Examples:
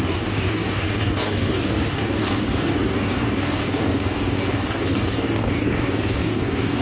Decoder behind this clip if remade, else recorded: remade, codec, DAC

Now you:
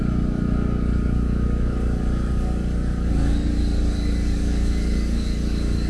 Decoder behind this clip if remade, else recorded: remade, codec, DAC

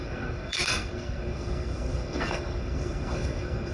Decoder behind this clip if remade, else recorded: remade, codec, SNAC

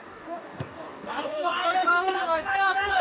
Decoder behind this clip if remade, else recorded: remade, codec, DAC